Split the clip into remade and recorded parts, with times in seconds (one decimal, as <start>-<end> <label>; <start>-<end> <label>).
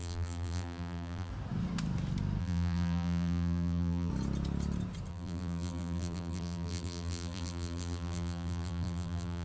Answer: 0.0-1.3 remade; 1.3-2.4 recorded; 2.4-4.1 remade; 4.1-5.1 recorded; 5.1-9.4 remade